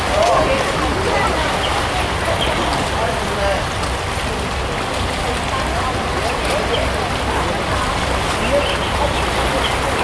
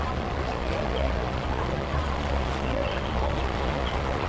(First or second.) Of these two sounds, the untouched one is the first